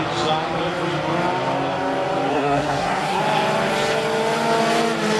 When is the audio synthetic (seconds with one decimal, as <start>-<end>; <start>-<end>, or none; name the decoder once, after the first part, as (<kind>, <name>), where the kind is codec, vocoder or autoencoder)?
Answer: 2.3-3.2 (codec, SNAC)